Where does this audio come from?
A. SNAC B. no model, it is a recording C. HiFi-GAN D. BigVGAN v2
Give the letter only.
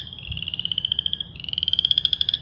D